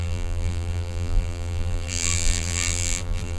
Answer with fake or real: fake